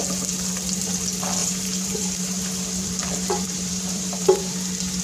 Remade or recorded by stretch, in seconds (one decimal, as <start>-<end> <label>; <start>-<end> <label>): 0.0-1.4 recorded; 1.4-4.4 remade; 4.4-5.0 recorded